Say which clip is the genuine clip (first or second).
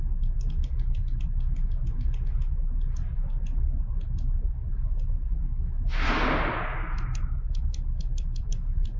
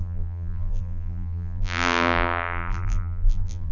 first